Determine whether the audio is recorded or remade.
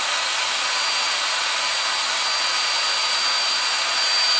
recorded